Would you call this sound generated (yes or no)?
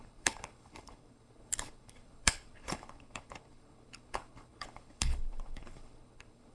yes